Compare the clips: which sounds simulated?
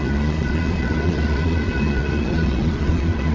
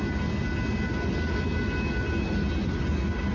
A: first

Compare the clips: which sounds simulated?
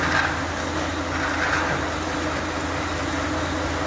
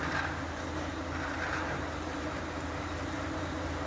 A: second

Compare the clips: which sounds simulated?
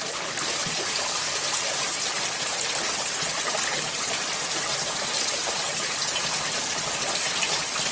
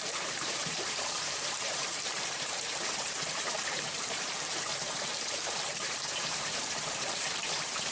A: second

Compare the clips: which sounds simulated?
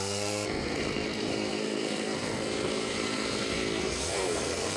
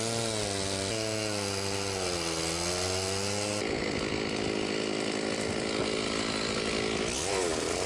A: first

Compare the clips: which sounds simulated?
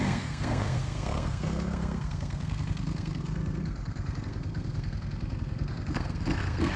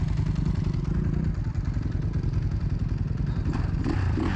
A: first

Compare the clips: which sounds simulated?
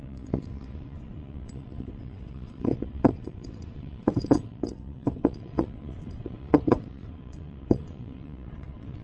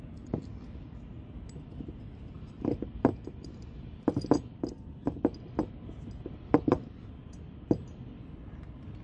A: first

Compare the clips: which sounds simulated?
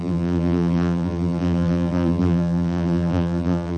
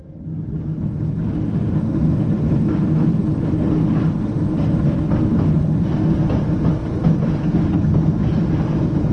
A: first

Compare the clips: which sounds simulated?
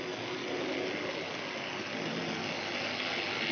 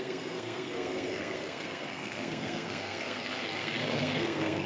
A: second